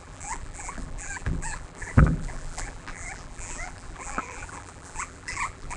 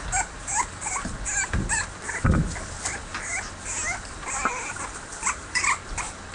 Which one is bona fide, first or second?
second